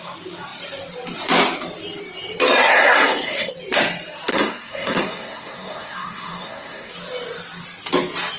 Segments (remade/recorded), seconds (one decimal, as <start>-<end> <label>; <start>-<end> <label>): 0.0-2.7 recorded; 2.7-3.5 remade; 3.5-4.3 recorded; 4.3-6.9 remade; 6.9-8.4 recorded